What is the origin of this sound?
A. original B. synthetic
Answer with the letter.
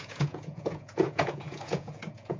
B